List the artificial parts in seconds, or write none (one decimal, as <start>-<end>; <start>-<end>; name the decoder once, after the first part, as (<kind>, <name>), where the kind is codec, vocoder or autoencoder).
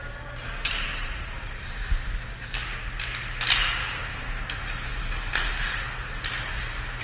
0.9-2.1 (vocoder, BigVGAN v2)